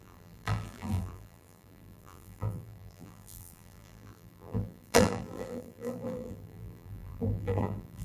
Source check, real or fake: fake